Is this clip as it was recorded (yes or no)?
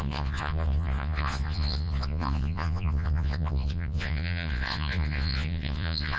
no